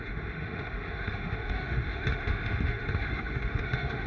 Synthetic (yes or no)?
yes